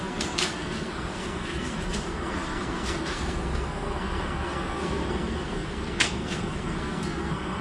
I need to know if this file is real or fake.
fake